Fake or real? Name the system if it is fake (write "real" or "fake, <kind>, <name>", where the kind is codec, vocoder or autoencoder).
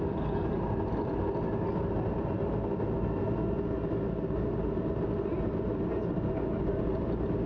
real